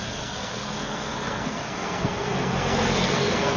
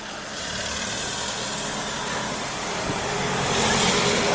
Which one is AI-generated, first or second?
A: first